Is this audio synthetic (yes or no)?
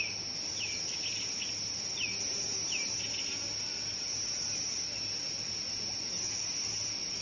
no